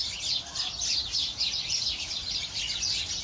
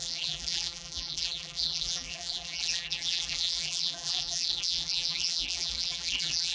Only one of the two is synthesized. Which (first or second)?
second